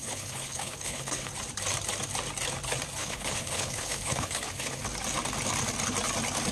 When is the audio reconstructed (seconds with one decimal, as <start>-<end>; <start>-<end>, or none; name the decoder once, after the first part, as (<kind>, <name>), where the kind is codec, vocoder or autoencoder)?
0.0-1.3 (codec, HILCodec); 3.0-4.8